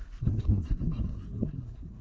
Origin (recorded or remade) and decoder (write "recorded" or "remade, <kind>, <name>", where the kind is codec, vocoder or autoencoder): remade, codec, SNAC